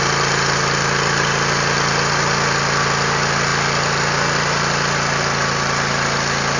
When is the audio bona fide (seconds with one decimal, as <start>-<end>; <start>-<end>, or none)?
0.0-6.6

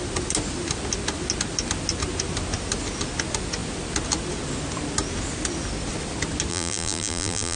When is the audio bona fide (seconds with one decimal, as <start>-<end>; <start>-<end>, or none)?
0.0-6.5